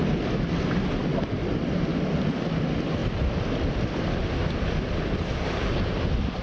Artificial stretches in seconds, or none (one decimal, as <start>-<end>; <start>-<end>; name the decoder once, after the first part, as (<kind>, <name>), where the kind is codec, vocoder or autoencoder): none